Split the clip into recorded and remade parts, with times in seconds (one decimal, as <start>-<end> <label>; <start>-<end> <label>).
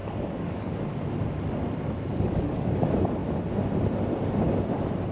0.0-0.8 remade; 0.8-2.1 recorded; 2.1-2.7 remade; 2.7-5.1 recorded